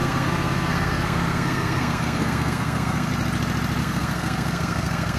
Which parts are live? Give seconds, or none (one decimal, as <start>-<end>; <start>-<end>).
3.1-3.8